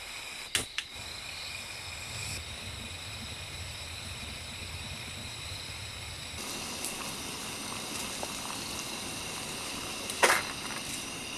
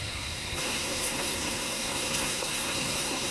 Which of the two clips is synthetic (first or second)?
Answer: second